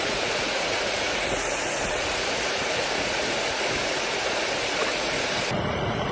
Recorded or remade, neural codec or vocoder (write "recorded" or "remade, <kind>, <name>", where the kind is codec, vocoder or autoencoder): remade, vocoder, Vocos